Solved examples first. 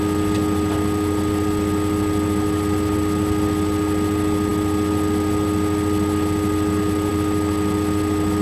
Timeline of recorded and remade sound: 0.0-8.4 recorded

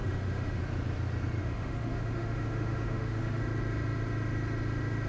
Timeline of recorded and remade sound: 0.0-0.6 remade; 0.6-1.4 recorded; 1.4-3.4 remade; 3.4-5.1 recorded

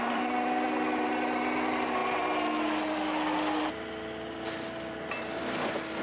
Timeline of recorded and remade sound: 0.0-6.0 recorded

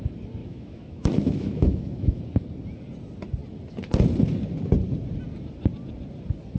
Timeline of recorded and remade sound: 0.0-0.4 recorded; 0.4-2.2 remade; 2.2-6.6 recorded

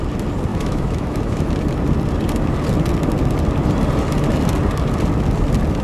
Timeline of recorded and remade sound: 0.0-0.5 recorded; 0.5-1.5 remade; 1.5-5.8 recorded

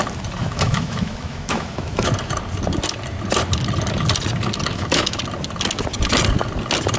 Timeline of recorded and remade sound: 0.0-0.4 recorded; 0.4-2.1 remade; 2.1-4.7 recorded; 4.7-5.2 remade; 5.2-7.0 recorded